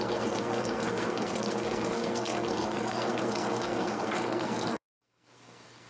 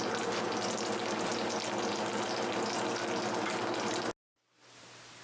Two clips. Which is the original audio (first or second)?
second